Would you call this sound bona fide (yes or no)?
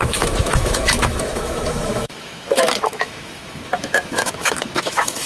no